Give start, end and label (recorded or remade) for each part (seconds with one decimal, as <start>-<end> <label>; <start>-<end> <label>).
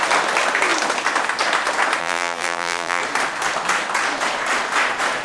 0.0-2.0 recorded; 2.0-3.0 remade; 3.0-5.2 recorded